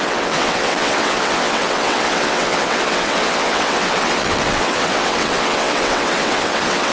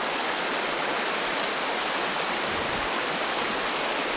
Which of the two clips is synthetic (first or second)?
first